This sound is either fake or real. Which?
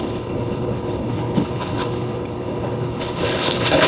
fake